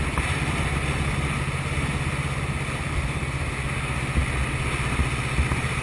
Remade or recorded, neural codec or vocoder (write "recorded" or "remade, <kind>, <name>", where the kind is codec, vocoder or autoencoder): recorded